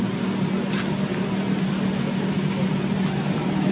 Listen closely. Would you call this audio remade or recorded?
recorded